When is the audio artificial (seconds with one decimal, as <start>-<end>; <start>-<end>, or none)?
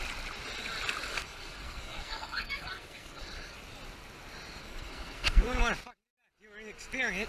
1.1-3.6; 4.6-5.6